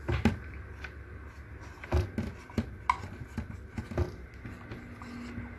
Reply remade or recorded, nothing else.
recorded